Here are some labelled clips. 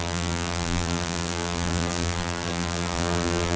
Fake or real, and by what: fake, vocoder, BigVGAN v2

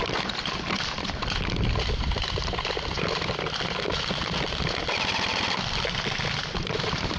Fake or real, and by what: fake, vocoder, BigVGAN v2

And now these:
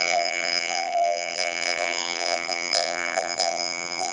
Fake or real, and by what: fake, vocoder, BigVGAN v2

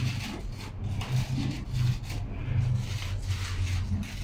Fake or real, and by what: real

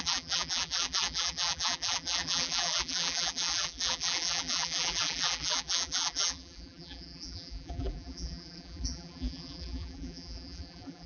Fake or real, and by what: fake, vocoder, BigVGAN v2